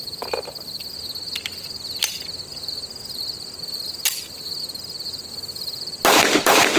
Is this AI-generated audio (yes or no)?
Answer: no